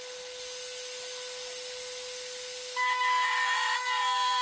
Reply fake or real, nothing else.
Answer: real